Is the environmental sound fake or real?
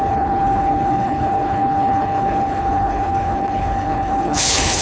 fake